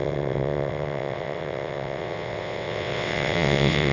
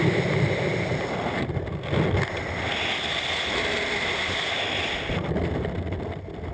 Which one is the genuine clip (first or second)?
second